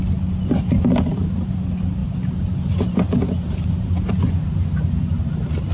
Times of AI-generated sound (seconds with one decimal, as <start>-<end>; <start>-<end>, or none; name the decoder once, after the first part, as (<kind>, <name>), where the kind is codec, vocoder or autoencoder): none